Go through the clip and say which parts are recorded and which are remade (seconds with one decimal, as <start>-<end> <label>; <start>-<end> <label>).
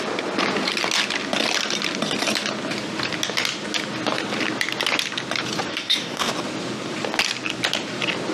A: 0.0-5.7 recorded; 5.7-6.3 remade; 6.3-8.3 recorded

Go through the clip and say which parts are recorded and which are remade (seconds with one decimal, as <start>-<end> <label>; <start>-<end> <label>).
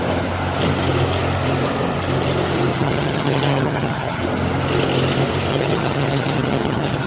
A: 0.0-2.7 recorded; 2.7-4.2 remade; 4.2-5.5 recorded; 5.5-7.1 remade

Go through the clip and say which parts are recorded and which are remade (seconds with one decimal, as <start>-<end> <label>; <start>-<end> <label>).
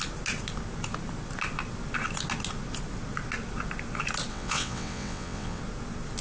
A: 0.0-4.3 recorded; 4.3-5.6 remade; 5.6-6.2 recorded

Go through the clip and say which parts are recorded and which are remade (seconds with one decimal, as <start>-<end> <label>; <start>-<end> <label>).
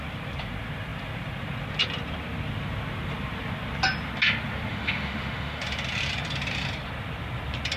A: 0.0-4.7 recorded; 4.7-5.6 remade; 5.6-7.8 recorded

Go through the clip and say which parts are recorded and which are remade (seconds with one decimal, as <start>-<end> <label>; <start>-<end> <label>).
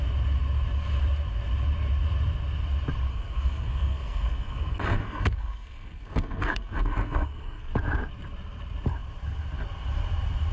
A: 0.0-3.1 recorded; 3.1-7.7 remade; 7.7-10.5 recorded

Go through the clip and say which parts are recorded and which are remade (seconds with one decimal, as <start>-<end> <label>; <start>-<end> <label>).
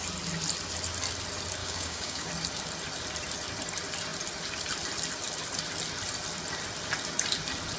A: 0.0-1.6 recorded; 1.6-2.3 remade; 2.3-7.8 recorded